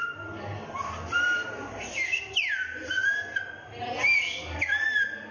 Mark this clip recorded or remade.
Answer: recorded